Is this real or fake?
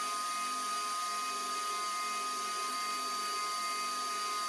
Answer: real